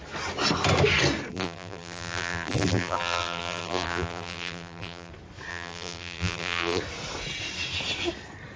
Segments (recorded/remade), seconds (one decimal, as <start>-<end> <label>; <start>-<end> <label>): 0.0-1.3 recorded; 1.3-5.1 remade; 5.1-5.5 recorded; 5.5-6.8 remade; 6.8-8.6 recorded